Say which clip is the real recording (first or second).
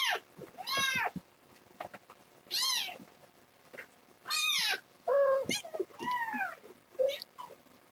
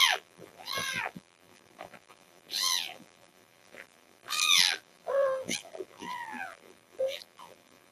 first